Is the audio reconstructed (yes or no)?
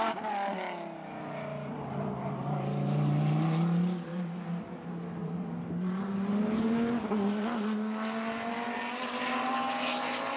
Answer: no